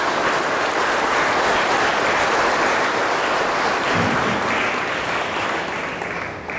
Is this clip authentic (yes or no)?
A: yes